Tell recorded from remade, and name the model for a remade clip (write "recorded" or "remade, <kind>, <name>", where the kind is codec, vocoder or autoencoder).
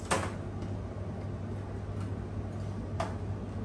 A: recorded